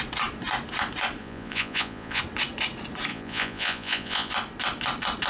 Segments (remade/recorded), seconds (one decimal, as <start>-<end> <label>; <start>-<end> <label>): 0.0-1.2 recorded; 1.2-2.2 remade; 2.2-3.1 recorded; 3.1-4.3 remade; 4.3-5.3 recorded